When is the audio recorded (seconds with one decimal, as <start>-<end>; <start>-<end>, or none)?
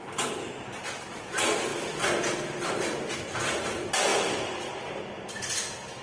0.0-6.0